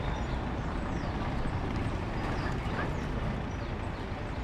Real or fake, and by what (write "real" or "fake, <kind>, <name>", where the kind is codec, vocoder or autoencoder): fake, vocoder, BigVGAN v2